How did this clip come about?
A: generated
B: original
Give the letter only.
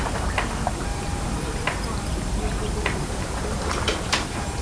A